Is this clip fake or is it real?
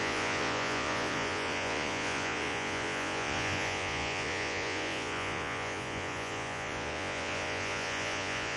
fake